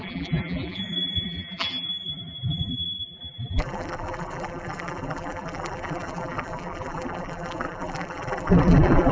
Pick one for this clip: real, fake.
fake